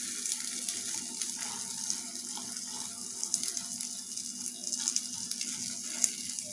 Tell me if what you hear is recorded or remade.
recorded